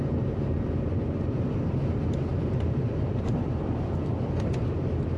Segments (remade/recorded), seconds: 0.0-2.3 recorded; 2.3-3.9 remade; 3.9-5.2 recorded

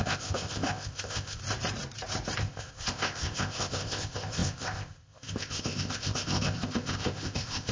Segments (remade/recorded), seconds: 0.0-1.4 remade; 1.4-2.4 recorded; 2.4-7.7 remade

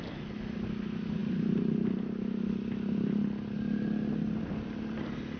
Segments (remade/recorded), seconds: 0.0-5.4 recorded

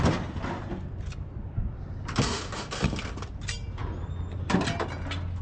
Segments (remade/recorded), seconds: 0.0-5.4 recorded